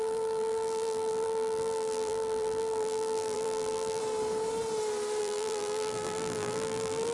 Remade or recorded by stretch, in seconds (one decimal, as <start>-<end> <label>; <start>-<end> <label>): 0.0-4.0 remade; 4.0-5.2 recorded; 5.2-7.1 remade